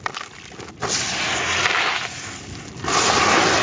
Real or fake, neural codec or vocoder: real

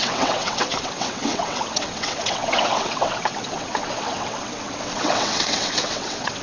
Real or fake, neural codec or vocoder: fake, vocoder, WaveNeXt